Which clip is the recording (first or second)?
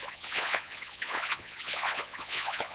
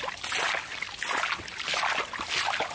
second